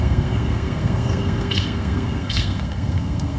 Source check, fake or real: fake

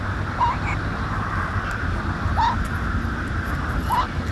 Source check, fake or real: real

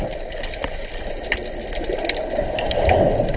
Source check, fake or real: real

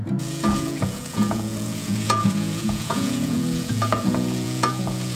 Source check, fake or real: fake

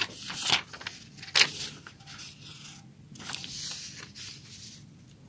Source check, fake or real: real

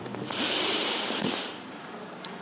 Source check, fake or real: fake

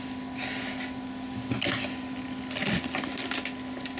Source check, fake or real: real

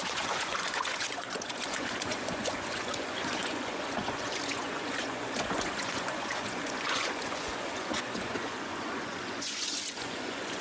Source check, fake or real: fake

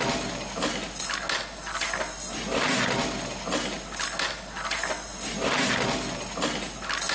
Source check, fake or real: real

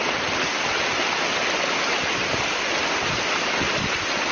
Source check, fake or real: real